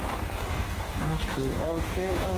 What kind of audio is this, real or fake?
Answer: fake